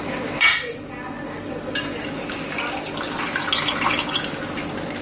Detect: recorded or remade recorded